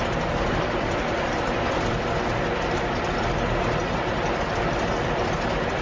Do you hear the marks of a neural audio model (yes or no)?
yes